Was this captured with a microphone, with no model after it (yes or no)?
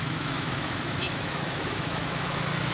no